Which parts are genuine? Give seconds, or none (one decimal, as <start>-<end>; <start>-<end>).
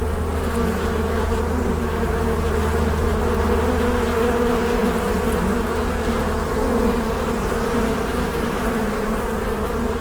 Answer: 0.0-10.0